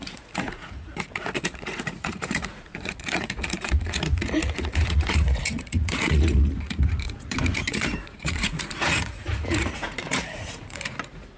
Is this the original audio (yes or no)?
no